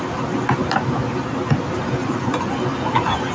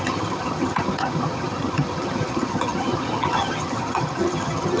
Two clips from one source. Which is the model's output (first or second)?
second